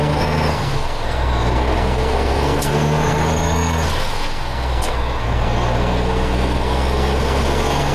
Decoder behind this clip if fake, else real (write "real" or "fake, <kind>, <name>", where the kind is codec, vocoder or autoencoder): fake, codec, SNAC